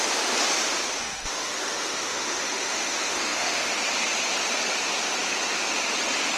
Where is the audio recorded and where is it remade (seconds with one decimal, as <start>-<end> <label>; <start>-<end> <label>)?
0.0-1.0 recorded; 1.0-3.7 remade; 3.7-6.4 recorded